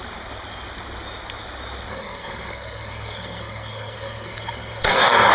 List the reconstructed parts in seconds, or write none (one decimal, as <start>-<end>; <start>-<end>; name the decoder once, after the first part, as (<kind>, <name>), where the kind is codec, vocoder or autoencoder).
1.9-5.3 (codec, SNAC)